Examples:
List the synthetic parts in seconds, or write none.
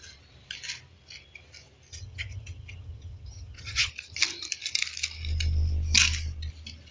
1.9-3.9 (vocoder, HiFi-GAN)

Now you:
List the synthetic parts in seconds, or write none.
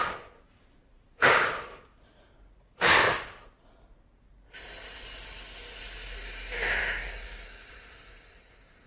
6.8-7.7 (codec, DAC)